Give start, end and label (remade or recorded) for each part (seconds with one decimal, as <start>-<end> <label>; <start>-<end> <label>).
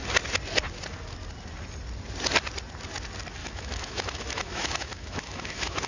0.0-3.4 recorded; 3.4-5.9 remade